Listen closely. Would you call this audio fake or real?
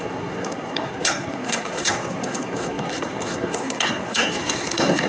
fake